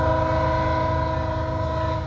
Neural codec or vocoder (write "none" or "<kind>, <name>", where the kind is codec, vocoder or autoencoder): none